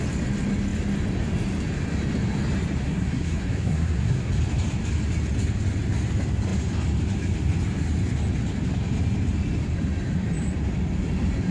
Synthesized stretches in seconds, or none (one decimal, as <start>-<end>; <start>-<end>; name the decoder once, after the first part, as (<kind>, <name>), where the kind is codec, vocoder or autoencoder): 2.8-4.3 (codec, SNAC)